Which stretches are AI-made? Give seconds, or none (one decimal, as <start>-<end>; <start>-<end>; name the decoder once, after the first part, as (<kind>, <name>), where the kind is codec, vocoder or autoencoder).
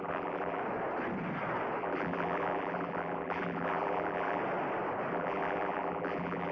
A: 0.0-0.6 (vocoder, BigVGAN v2); 1.8-4.4; 5.1-6.5